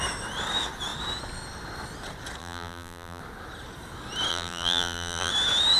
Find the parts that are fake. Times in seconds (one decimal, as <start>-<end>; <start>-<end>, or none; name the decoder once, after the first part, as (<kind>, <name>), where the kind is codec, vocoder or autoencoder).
2.4-3.2 (vocoder, BigVGAN v2); 4.3-5.3